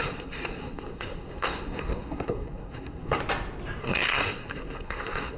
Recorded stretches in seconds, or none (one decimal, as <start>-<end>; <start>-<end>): 3.2-3.8